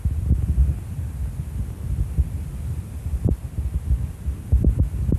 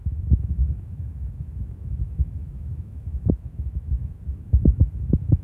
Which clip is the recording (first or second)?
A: first